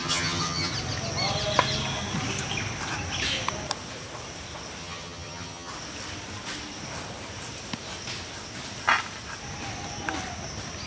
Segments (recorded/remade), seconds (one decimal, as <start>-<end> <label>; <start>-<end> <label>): 0.0-0.7 remade; 0.7-4.8 recorded; 4.8-5.7 remade; 5.7-10.9 recorded